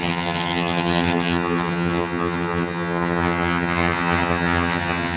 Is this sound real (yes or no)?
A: no